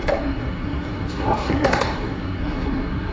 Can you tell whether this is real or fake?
fake